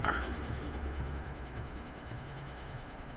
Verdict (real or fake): fake